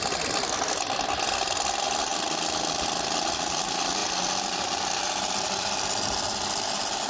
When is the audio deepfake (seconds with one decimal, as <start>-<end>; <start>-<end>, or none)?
0.0-7.1